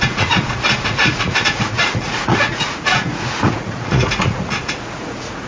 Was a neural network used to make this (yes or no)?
yes